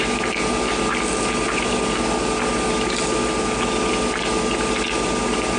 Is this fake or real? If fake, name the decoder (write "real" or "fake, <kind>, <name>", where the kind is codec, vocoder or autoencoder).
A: real